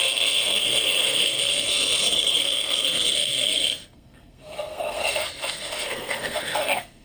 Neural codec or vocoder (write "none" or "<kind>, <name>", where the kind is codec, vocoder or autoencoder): codec, SNAC